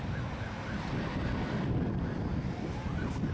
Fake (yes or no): no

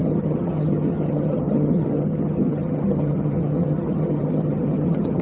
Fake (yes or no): yes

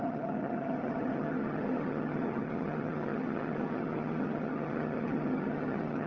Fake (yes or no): yes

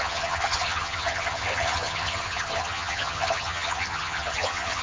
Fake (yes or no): yes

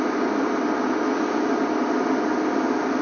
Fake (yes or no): no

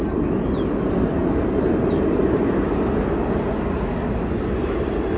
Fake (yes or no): no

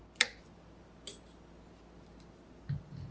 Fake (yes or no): no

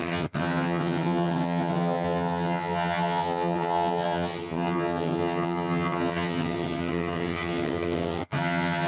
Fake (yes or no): yes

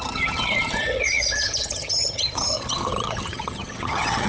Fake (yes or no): yes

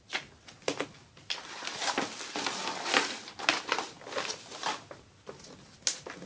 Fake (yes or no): no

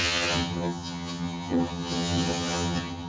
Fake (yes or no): yes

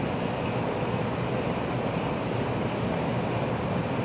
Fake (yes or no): no